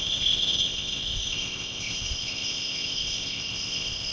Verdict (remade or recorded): remade